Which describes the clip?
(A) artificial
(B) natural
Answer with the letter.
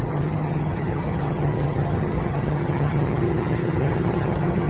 A